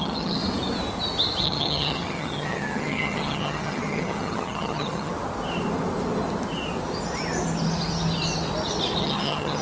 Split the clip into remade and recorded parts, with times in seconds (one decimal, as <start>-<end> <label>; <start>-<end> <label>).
0.0-0.4 remade; 0.4-1.4 recorded; 1.4-5.1 remade; 5.1-9.0 recorded; 9.0-9.6 remade